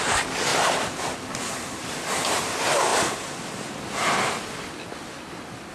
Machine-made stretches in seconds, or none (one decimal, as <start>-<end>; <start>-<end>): 0.5-2.4